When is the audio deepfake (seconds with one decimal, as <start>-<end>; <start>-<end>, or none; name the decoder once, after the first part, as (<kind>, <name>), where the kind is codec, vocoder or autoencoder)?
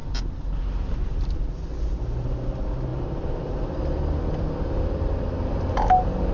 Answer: 2.9-5.7 (vocoder, BigVGAN v2)